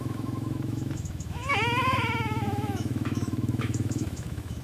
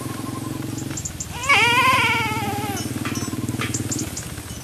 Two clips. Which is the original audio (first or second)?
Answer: second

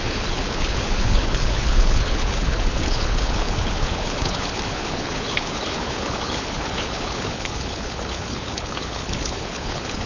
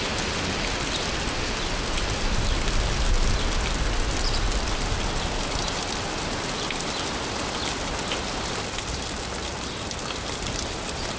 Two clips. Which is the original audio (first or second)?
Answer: second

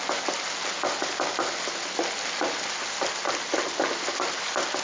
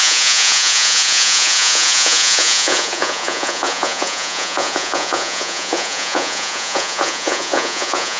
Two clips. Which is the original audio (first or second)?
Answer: first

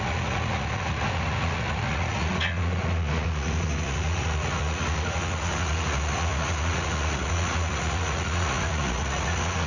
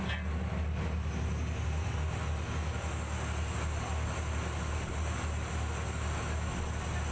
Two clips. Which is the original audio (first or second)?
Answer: second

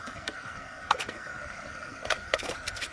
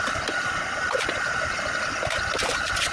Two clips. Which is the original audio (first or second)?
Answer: second